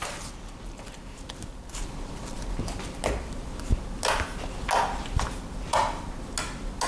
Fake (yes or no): no